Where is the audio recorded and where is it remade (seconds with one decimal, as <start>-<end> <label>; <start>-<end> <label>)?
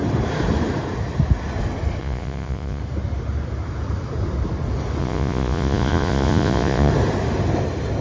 0.0-2.0 recorded; 2.0-2.8 remade; 2.8-5.0 recorded; 5.0-6.9 remade; 6.9-8.0 recorded